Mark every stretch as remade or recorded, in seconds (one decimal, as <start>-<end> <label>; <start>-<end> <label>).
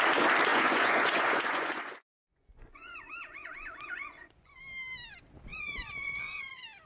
0.0-0.5 recorded; 0.5-4.6 remade; 4.6-5.5 recorded; 5.5-6.4 remade; 6.4-6.9 recorded